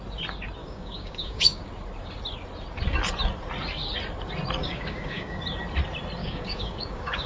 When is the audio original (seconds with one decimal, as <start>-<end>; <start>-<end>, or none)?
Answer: 0.0-0.6; 1.7-4.6; 5.4-6.2